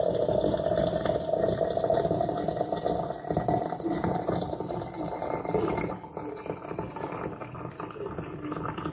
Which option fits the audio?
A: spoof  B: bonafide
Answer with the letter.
B